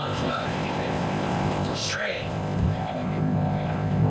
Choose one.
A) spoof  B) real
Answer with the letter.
A